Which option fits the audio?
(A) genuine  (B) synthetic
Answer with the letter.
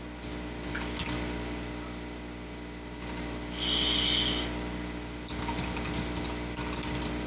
A